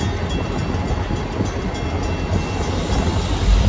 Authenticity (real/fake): real